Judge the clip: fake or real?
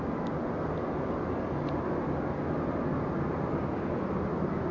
real